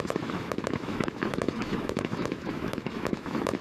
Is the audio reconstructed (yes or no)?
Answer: yes